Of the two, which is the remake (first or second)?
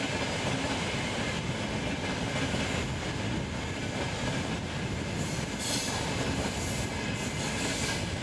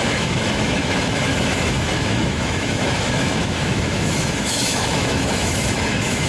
second